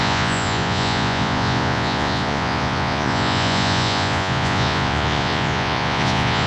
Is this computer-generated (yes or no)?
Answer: yes